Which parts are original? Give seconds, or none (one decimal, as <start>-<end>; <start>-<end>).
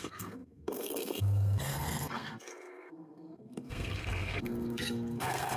none